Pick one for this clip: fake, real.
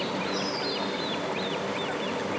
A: real